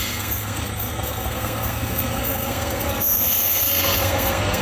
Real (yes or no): no